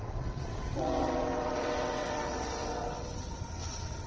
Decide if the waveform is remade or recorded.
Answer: remade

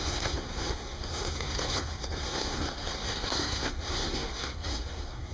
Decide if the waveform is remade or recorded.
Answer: remade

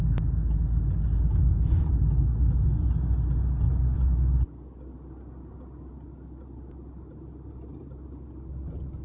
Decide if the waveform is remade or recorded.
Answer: recorded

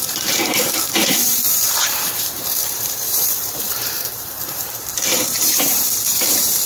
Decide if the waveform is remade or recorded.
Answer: remade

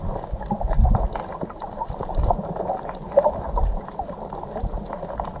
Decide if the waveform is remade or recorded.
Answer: recorded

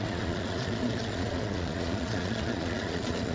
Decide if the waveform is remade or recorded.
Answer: remade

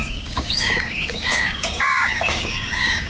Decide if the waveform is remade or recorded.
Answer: remade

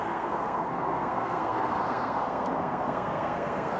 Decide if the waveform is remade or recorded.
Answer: remade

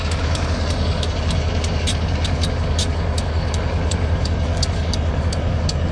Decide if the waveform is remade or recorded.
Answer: remade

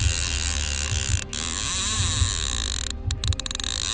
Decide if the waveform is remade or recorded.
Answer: recorded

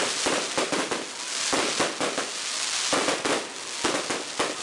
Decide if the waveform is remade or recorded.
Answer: recorded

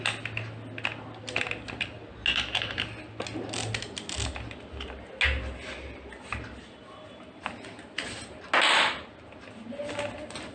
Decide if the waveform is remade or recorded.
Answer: recorded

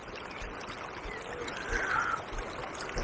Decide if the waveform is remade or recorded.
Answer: remade